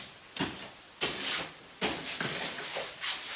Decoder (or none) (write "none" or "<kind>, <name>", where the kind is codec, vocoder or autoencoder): none